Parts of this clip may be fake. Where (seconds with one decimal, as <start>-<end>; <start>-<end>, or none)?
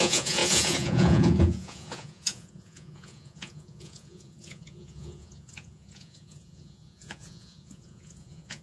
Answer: 0.0-8.6